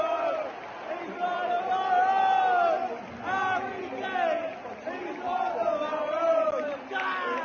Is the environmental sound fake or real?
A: real